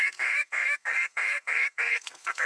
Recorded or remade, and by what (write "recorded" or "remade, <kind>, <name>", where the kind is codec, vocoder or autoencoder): remade, codec, SNAC